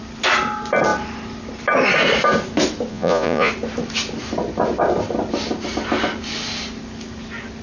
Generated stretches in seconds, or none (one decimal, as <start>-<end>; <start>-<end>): 2.9-3.5